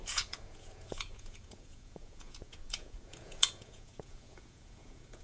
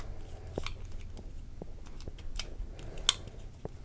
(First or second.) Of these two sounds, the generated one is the first